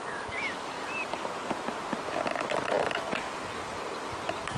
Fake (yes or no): no